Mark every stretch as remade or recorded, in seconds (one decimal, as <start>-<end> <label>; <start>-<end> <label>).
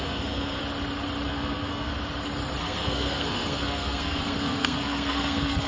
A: 0.0-0.6 remade; 0.6-1.3 recorded; 1.3-1.9 remade; 1.9-2.6 recorded; 2.6-5.7 remade